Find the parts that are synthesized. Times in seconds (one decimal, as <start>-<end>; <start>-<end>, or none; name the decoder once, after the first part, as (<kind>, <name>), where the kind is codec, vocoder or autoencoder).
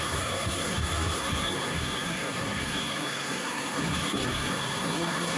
0.0-5.4 (codec, SNAC)